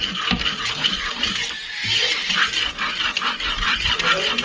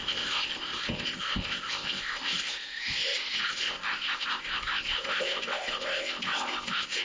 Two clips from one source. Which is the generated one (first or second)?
second